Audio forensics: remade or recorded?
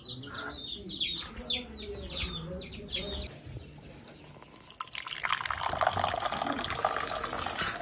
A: recorded